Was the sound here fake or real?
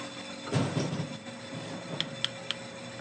real